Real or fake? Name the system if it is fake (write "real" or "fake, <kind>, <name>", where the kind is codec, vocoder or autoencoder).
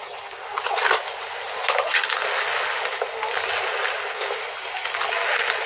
real